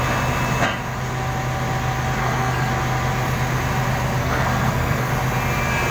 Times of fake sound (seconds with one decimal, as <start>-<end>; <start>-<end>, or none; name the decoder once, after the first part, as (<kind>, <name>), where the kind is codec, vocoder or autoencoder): 2.2-2.7 (codec, SNAC); 4.2-5.1